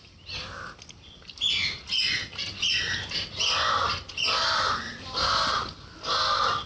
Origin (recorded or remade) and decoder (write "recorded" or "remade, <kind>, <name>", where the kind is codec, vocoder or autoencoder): recorded